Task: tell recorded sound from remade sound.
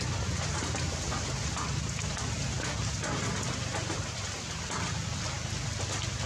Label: recorded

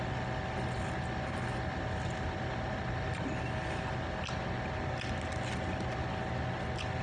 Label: recorded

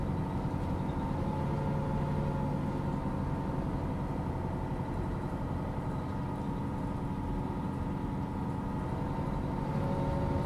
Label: recorded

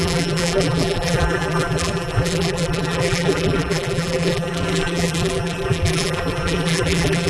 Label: remade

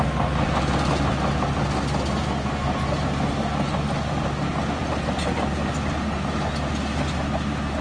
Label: recorded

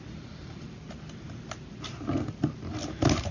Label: recorded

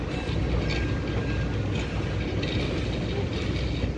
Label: recorded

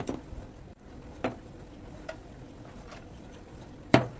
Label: remade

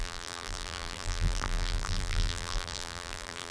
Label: remade